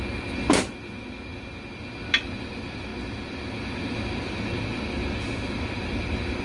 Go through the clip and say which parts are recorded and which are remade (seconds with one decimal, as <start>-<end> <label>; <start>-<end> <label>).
0.0-6.4 recorded